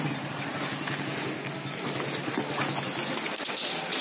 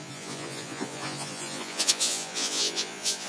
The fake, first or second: second